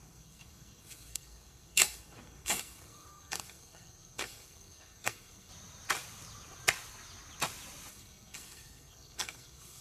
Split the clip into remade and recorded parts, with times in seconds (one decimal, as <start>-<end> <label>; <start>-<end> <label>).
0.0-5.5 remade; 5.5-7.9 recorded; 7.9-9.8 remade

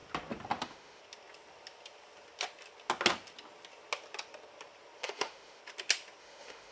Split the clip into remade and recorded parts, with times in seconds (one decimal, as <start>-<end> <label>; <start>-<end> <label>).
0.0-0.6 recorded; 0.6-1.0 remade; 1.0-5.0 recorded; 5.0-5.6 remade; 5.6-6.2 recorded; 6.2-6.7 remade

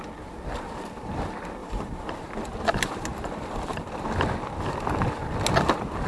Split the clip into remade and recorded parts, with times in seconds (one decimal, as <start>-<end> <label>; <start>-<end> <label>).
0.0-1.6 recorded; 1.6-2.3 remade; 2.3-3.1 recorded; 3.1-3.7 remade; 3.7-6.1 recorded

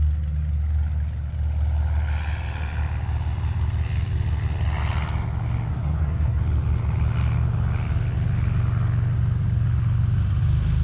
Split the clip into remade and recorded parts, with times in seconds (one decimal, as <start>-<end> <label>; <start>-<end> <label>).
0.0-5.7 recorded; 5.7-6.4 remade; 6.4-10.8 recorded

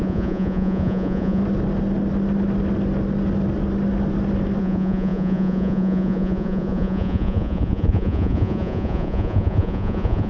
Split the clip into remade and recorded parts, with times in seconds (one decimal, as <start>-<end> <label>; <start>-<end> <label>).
0.0-1.4 remade; 1.4-4.6 recorded; 4.6-10.3 remade

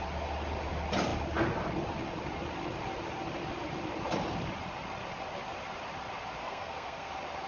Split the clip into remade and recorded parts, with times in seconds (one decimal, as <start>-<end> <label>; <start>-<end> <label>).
0.0-6.4 recorded; 6.4-7.1 remade; 7.1-7.5 recorded

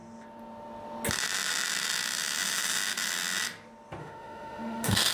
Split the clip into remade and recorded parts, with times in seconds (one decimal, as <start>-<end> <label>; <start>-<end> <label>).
0.0-4.0 recorded; 4.0-5.1 remade